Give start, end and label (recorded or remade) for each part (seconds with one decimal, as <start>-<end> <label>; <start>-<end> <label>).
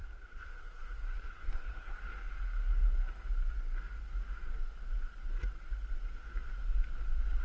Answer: 0.0-2.0 remade; 2.0-7.4 recorded